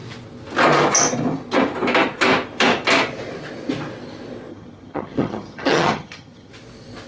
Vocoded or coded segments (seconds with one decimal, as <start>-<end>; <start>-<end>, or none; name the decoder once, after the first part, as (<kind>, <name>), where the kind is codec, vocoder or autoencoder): 4.5-6.5 (vocoder, HiFi-GAN)